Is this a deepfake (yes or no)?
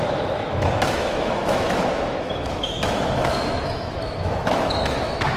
yes